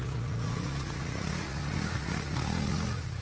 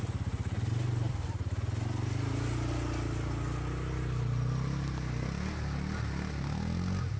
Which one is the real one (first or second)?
second